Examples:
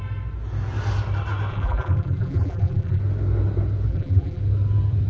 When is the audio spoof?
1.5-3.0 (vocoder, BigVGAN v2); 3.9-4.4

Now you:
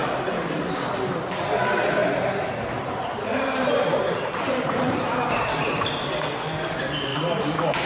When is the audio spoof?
2.0-6.3 (vocoder, BigVGAN v2); 7.1-7.9

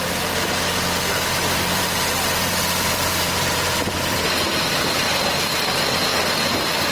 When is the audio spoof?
1.4-5.5 (vocoder, BigVGAN v2); 6.1-6.9

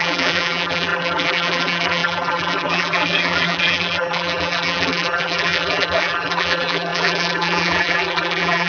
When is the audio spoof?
0.0-8.7 (vocoder, BigVGAN v2)

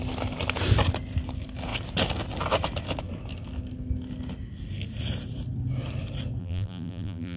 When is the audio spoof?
6.4-7.4 (vocoder, BigVGAN v2)

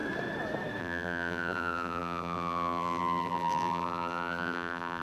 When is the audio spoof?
0.8-5.0 (vocoder, BigVGAN v2)

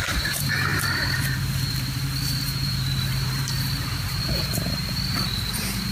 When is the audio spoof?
0.0-5.9 (vocoder, BigVGAN v2)

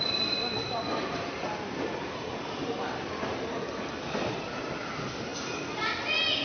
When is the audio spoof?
0.0-5.3 (vocoder, BigVGAN v2)